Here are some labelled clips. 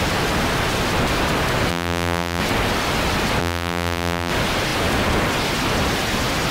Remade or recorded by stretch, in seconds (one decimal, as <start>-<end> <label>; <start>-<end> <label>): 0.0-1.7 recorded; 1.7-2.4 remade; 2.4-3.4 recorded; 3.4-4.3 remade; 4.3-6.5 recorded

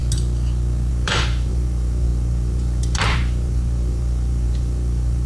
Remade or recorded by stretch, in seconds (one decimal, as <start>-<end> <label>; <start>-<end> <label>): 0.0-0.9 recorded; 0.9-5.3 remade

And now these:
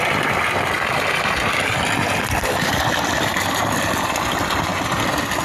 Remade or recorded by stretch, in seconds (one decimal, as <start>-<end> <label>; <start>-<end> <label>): 0.0-4.7 remade; 4.7-5.4 recorded

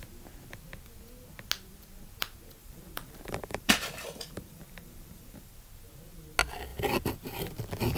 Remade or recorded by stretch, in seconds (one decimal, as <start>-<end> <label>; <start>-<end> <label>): 0.0-2.6 recorded; 2.6-5.5 remade; 5.5-8.0 recorded

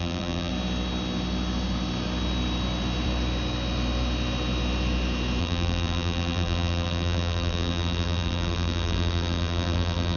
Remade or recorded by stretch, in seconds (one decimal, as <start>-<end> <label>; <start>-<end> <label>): 0.0-0.5 remade; 0.5-5.4 recorded; 5.4-10.2 remade

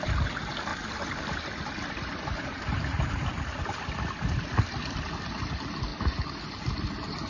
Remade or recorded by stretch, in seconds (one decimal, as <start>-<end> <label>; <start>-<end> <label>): 0.0-0.7 recorded; 0.7-5.1 remade; 5.1-7.3 recorded